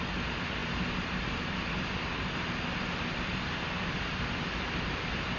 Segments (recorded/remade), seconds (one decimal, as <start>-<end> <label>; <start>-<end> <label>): 0.0-5.4 recorded